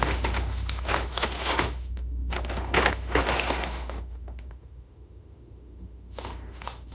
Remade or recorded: remade